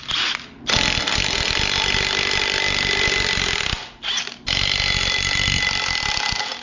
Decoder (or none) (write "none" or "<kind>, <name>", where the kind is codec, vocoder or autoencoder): none